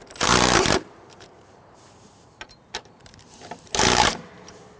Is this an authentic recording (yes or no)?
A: no